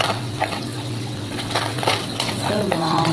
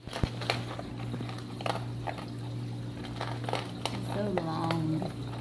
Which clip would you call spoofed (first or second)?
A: first